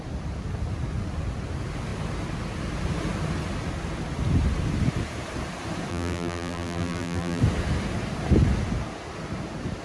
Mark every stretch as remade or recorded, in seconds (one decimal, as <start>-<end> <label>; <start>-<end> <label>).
0.0-5.9 recorded; 5.9-7.4 remade; 7.4-9.8 recorded